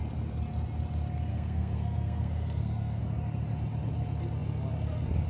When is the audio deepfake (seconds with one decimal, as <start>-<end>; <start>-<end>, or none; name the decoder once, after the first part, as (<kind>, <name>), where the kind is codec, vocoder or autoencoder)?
1.3-3.0 (codec, SNAC)